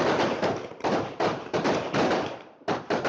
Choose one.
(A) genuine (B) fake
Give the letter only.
B